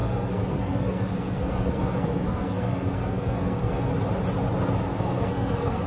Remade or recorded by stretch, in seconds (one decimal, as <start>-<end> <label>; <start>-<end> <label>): 0.0-3.9 remade; 3.9-4.8 recorded; 4.8-5.9 remade